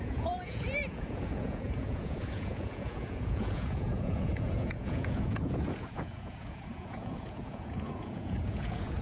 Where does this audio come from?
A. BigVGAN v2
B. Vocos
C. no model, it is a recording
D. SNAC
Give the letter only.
B